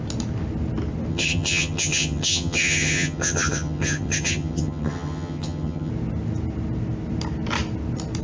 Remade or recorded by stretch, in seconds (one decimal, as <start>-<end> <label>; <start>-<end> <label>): 0.0-1.1 recorded; 1.1-5.9 remade; 5.9-8.2 recorded